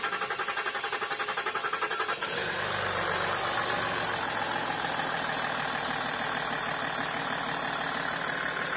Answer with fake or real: real